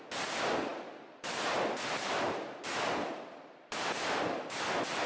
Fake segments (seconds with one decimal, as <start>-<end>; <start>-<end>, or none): none